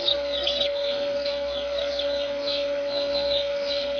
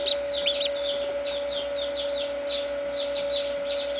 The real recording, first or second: second